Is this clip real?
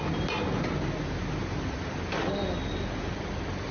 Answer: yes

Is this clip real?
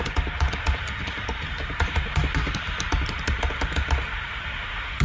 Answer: yes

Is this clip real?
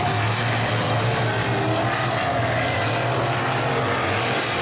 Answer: yes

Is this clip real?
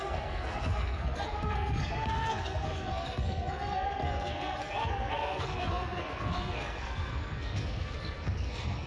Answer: no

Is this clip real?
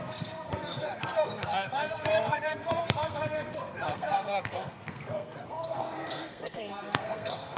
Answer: no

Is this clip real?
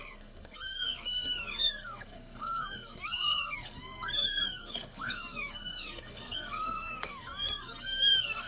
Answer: no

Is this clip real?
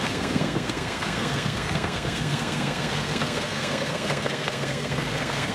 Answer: no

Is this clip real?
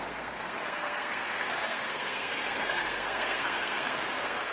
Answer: no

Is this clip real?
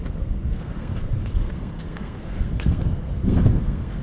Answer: no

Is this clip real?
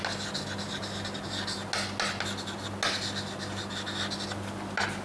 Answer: yes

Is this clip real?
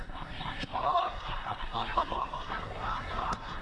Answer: no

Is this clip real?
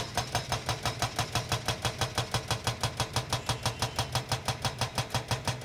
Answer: yes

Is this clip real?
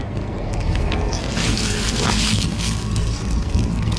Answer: no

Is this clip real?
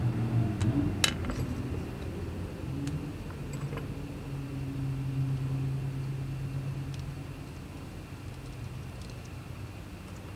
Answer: yes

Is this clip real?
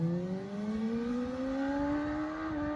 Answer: yes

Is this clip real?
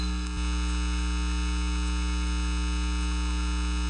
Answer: yes